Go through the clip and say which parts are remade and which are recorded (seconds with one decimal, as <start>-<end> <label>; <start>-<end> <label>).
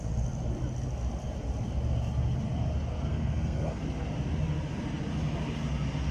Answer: 0.0-3.1 recorded; 3.1-3.8 remade; 3.8-6.1 recorded